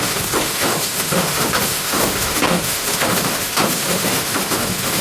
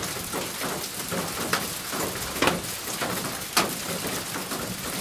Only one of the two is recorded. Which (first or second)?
second